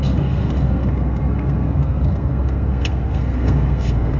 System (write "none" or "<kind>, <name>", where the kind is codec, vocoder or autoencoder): codec, SNAC